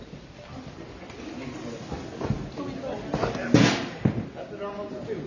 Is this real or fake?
real